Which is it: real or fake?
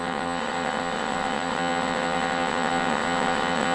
fake